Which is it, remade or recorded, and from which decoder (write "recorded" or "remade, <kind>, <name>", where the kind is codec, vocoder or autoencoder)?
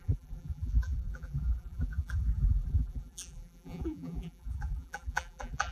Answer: remade, vocoder, BigVGAN v2